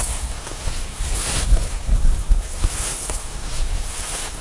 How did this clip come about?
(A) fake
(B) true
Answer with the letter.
A